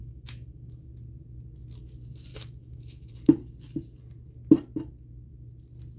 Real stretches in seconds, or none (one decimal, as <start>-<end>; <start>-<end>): 0.8-2.3; 3.1-6.0